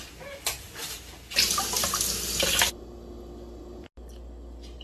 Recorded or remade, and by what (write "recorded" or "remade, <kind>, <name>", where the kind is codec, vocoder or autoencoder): recorded